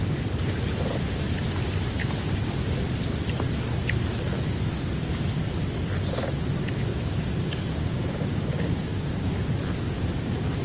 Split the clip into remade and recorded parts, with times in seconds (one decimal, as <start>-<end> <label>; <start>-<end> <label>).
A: 0.0-6.9 recorded; 6.9-9.3 remade; 9.3-10.6 recorded